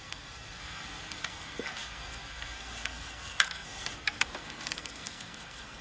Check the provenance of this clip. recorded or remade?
remade